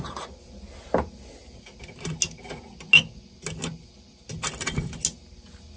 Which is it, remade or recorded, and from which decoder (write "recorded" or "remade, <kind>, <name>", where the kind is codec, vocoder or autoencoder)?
recorded